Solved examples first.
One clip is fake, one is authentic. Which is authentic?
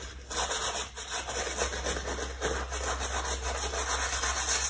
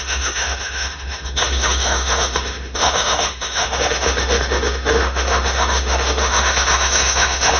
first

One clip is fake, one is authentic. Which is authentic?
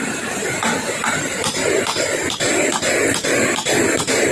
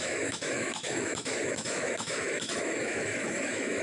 first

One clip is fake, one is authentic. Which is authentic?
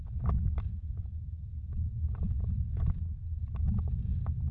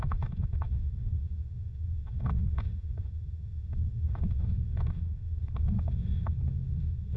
first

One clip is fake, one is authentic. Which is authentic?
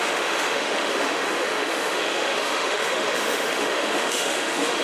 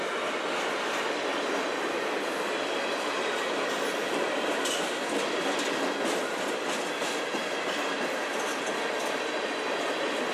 second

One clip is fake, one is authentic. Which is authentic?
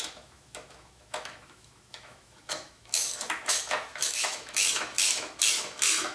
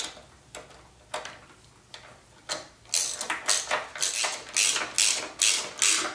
second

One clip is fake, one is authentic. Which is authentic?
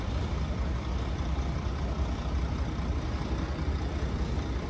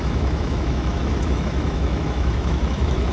first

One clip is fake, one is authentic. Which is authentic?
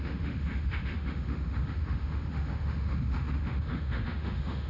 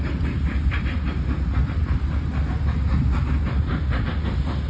second